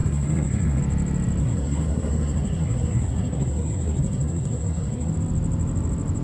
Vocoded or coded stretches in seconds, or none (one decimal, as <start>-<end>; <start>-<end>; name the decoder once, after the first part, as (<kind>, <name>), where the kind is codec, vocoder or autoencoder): 0.0-0.8 (codec, SNAC); 1.4-5.1